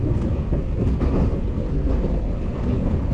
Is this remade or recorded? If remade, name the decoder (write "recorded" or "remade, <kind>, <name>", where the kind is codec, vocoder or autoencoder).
remade, codec, SNAC